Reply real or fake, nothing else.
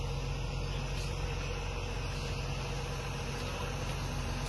real